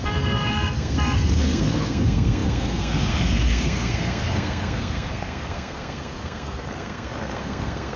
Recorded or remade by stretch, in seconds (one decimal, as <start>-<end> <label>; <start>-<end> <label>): 0.0-8.0 remade

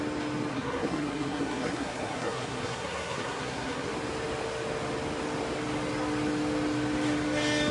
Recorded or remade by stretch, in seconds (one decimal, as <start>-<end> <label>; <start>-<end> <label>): 0.0-0.5 recorded; 0.5-3.9 remade; 3.9-7.7 recorded

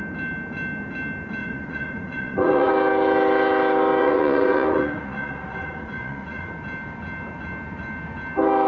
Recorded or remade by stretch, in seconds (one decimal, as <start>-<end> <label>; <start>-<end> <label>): 0.0-1.4 recorded; 1.4-2.7 remade; 2.7-4.0 recorded; 4.0-6.5 remade; 6.5-8.7 recorded